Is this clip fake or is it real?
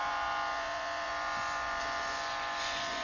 fake